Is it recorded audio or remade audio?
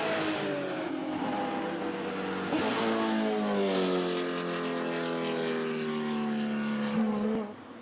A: recorded